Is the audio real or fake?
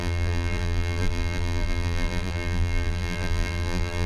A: fake